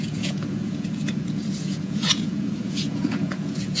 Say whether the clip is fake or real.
fake